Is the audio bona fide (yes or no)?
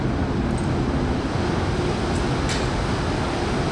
yes